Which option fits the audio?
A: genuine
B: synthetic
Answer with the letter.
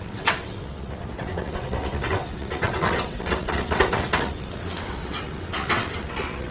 B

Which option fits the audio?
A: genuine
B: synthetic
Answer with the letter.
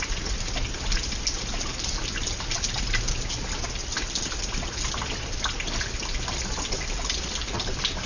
A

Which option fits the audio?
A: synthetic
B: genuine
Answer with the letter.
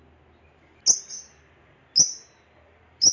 B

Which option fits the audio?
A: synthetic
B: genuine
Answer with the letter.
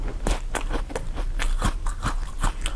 B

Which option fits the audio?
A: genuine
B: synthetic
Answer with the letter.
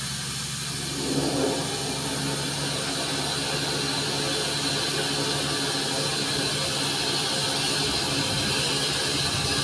A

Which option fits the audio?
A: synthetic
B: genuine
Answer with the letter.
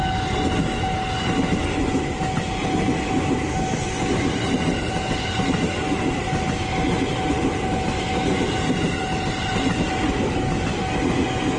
B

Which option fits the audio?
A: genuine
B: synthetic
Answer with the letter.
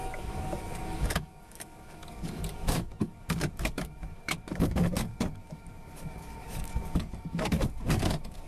B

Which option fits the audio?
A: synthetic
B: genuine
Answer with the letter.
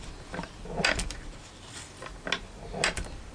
B